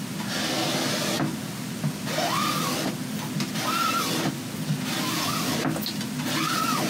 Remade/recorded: recorded